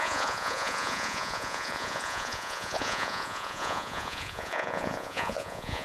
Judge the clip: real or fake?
fake